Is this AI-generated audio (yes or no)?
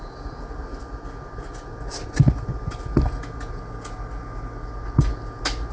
no